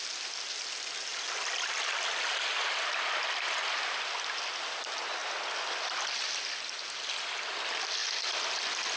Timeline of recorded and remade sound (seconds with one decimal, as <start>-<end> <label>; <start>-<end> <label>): 0.0-9.0 recorded